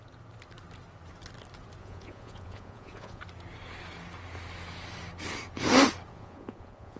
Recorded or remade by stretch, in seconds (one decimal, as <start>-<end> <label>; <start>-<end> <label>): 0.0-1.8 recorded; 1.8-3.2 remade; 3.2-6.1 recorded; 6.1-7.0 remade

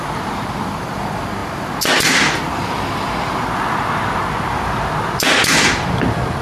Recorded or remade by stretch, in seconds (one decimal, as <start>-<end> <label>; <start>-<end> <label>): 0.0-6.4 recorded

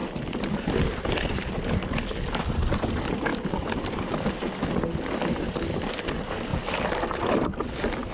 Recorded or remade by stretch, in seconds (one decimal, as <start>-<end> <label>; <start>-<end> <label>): 0.0-8.1 recorded

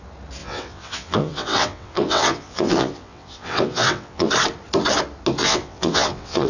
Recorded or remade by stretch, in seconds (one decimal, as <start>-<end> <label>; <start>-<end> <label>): 0.0-0.4 recorded; 0.4-4.3 remade; 4.3-5.4 recorded; 5.4-6.5 remade